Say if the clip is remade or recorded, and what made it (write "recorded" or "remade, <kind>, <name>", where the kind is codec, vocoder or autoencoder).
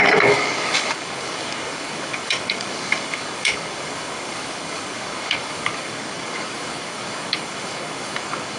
remade, codec, DAC